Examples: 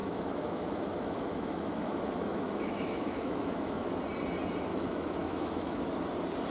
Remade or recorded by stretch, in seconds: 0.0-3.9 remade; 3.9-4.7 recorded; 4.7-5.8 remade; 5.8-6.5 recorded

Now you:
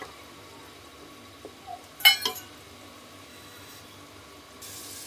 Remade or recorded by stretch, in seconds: 0.0-3.3 recorded; 3.3-3.8 remade; 3.8-5.1 recorded

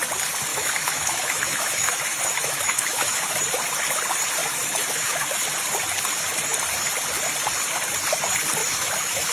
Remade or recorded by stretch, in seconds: 0.0-0.5 recorded; 0.5-3.4 remade; 3.4-4.4 recorded; 4.4-5.4 remade; 5.4-8.6 recorded; 8.6-9.3 remade